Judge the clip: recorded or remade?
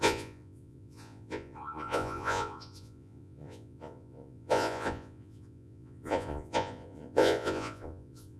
remade